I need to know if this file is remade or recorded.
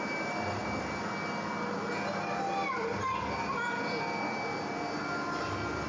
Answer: recorded